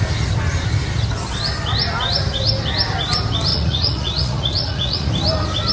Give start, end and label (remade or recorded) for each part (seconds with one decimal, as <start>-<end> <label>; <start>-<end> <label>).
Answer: 0.0-3.5 recorded; 3.5-5.1 remade; 5.1-5.7 recorded

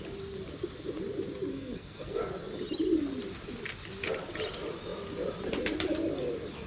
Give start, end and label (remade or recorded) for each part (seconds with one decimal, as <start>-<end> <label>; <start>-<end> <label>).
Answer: 0.0-1.5 recorded; 1.5-2.2 remade; 2.2-6.7 recorded

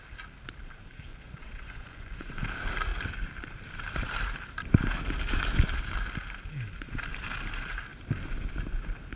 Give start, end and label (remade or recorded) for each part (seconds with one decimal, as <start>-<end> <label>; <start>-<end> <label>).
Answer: 0.0-1.1 recorded; 1.1-2.4 remade; 2.4-9.2 recorded

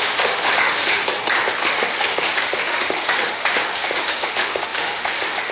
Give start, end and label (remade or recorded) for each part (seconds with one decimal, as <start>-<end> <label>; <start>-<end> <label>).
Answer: 0.0-1.0 remade; 1.0-1.6 recorded; 1.6-5.5 remade

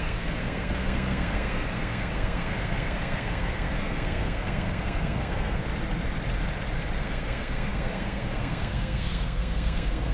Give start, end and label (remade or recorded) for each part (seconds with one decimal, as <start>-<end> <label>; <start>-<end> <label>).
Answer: 0.0-5.6 remade; 5.6-7.0 recorded; 7.0-10.1 remade

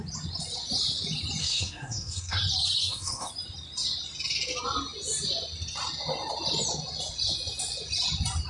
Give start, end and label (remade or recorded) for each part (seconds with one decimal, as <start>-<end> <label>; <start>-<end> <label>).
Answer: 0.0-1.4 recorded; 1.4-2.4 remade; 2.4-2.8 recorded; 2.8-3.3 remade; 3.3-8.5 recorded

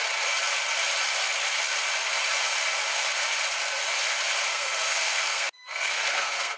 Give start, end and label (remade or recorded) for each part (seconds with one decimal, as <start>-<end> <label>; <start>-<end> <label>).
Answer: 0.0-4.5 recorded; 4.5-6.6 remade

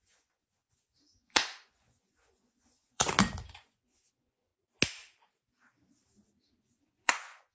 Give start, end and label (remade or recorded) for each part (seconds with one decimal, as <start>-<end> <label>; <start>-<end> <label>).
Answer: 0.0-3.1 remade; 3.1-3.6 recorded; 3.6-4.5 remade; 4.5-6.6 recorded; 6.6-7.5 remade